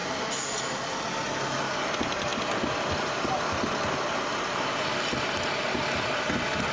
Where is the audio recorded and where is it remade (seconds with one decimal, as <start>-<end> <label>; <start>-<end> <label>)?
0.0-6.7 recorded

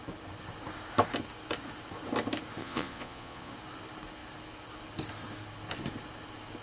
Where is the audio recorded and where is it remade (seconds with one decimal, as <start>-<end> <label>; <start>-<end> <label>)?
0.0-2.6 recorded; 2.6-3.5 remade; 3.5-6.6 recorded

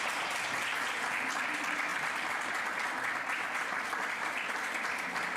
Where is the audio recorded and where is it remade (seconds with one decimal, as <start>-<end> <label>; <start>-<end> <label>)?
0.0-5.4 recorded

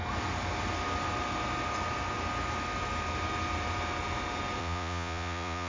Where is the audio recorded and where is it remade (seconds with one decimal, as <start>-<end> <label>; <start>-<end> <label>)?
0.0-4.6 recorded; 4.6-5.7 remade

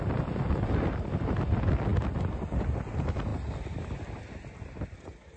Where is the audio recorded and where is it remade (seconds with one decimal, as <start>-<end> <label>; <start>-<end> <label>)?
0.0-5.4 recorded